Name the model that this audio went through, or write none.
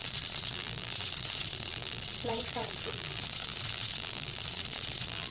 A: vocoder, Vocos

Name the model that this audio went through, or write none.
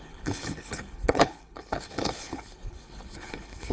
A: codec, HILCodec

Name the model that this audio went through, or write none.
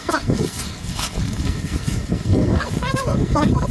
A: codec, SNAC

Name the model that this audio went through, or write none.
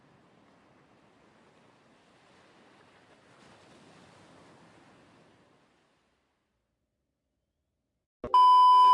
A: none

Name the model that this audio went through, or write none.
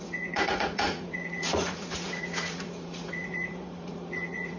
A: vocoder, Vocos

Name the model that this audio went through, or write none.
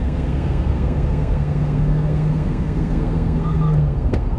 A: codec, SNAC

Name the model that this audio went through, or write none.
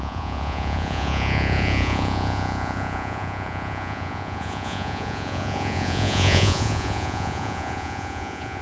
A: vocoder, Vocos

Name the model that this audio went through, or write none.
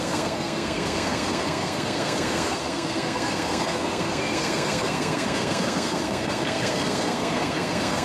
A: codec, SNAC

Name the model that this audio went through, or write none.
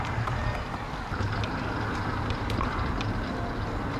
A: none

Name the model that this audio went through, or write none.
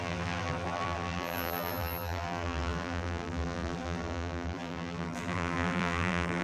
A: vocoder, BigVGAN v2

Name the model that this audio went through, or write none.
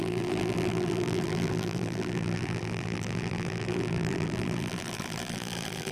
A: vocoder, BigVGAN v2